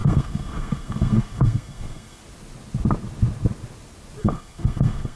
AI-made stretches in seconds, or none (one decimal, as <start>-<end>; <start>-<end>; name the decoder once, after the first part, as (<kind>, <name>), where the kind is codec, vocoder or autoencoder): 0.0-2.2 (codec, SNAC); 4.2-5.2